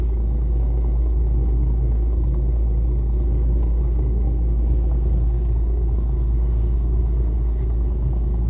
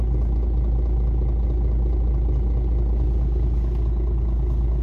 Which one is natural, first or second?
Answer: second